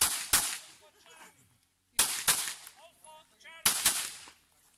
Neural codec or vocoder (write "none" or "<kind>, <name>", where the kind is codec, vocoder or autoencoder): none